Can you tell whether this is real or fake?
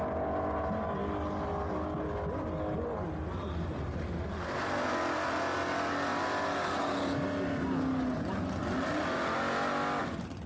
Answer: real